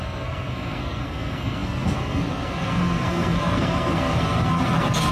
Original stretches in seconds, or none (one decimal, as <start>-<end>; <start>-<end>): none